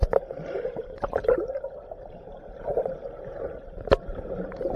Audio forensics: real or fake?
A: fake